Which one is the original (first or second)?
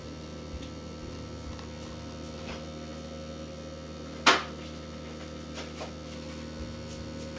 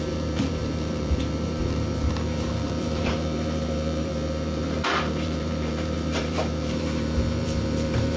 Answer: first